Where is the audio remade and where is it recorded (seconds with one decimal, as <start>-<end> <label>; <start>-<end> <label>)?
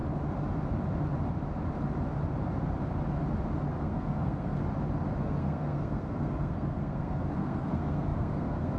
0.0-3.7 recorded; 3.7-4.6 remade; 4.6-5.2 recorded; 5.2-8.8 remade